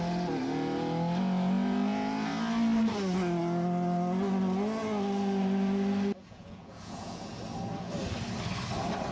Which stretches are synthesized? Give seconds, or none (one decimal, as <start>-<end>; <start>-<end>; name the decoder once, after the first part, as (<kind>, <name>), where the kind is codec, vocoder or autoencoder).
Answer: 6.2-7.3 (vocoder, Vocos)